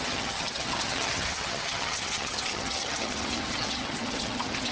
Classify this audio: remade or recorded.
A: remade